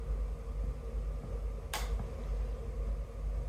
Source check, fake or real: real